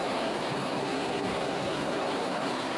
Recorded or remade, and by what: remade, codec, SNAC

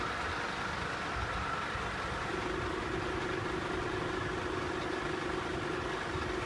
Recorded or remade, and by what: recorded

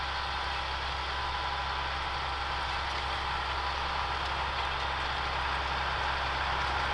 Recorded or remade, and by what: recorded